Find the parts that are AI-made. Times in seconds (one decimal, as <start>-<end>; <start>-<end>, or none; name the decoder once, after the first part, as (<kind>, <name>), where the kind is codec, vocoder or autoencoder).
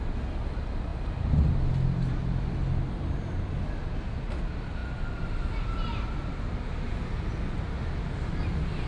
none